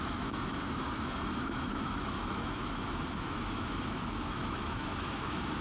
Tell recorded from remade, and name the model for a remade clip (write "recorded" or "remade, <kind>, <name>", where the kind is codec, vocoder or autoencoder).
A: remade, autoencoder, DAC-VAE